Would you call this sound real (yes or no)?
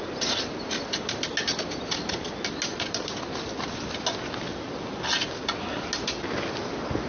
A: yes